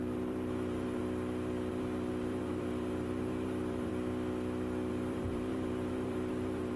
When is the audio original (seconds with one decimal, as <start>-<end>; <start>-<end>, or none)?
1.0-1.7; 3.9-4.9